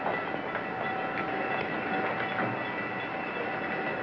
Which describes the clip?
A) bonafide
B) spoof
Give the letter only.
A